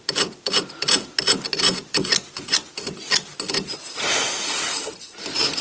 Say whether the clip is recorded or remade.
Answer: recorded